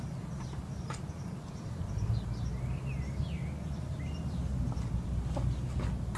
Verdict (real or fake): real